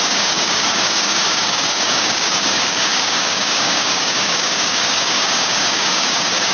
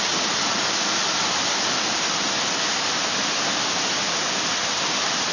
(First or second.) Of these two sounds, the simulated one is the first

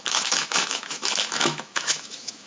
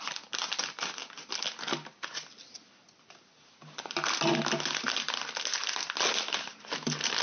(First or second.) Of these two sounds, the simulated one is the first